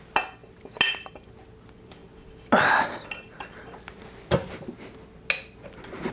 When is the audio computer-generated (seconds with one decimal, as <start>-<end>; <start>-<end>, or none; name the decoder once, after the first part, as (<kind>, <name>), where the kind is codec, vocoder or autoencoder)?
none